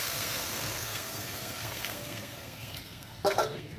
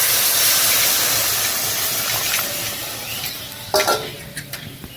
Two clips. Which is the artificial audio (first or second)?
first